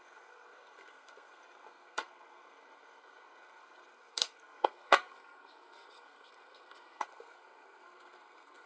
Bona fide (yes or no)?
no